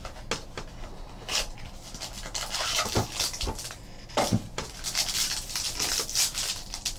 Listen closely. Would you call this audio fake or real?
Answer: real